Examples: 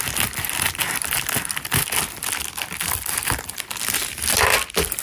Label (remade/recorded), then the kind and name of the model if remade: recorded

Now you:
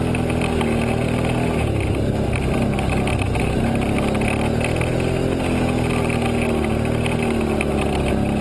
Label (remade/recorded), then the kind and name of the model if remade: recorded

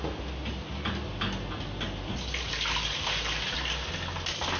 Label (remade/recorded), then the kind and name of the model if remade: recorded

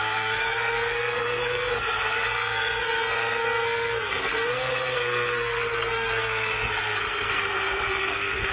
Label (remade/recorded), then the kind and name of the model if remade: remade, codec, SNAC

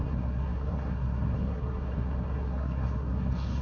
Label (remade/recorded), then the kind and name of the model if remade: remade, codec, SNAC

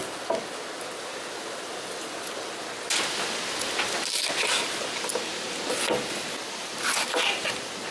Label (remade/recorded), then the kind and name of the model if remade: recorded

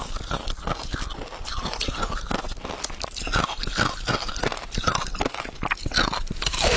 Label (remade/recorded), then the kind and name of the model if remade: recorded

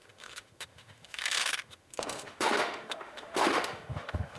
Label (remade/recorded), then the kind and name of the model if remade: remade, autoencoder, DAC-VAE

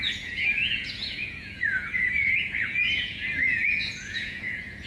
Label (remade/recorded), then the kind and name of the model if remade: remade, vocoder, Vocos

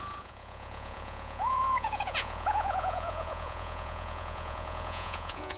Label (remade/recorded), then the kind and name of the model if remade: remade, vocoder, Vocos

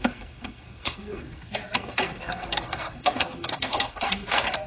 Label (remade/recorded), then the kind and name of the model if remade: remade, codec, SNAC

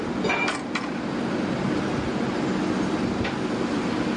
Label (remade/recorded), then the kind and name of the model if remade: recorded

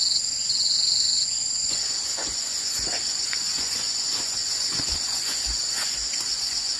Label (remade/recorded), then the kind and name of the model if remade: remade, vocoder, Vocos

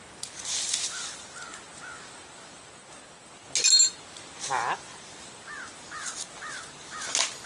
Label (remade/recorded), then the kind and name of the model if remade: recorded